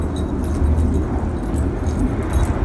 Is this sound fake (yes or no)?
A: no